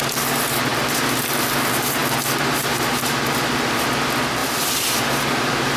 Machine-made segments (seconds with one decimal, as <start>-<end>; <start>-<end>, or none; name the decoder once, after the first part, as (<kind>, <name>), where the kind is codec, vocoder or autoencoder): 4.4-5.1 (vocoder, BigVGAN v2)